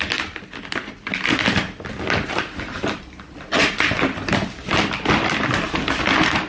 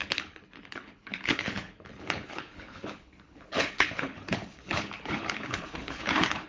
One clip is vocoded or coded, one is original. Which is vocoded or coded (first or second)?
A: second